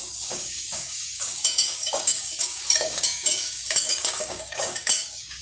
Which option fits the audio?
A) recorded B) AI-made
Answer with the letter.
B